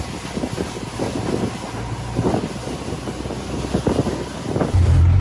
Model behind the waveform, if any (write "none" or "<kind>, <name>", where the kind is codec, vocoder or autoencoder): none